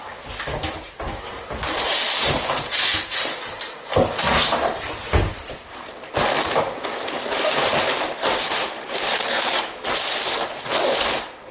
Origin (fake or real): real